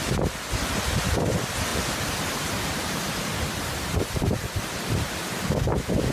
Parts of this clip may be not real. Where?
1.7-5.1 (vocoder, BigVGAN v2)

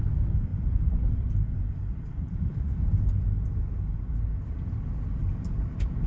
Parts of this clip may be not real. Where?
0.5-2.9 (vocoder, BigVGAN v2); 5.2-6.1